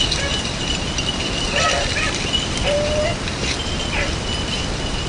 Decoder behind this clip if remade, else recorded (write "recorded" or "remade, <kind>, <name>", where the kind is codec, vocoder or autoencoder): recorded